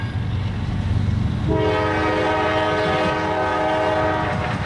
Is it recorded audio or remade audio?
recorded